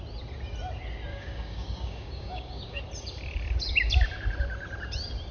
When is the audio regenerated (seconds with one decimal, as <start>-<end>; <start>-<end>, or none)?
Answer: 1.1-2.8